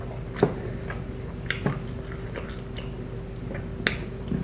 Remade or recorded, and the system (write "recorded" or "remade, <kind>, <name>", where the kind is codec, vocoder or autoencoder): recorded